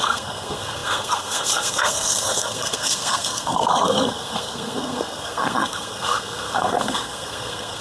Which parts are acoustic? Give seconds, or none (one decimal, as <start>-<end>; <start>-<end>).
none